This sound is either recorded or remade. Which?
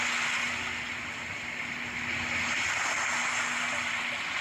recorded